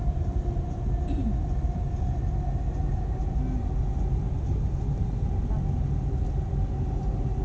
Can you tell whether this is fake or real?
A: real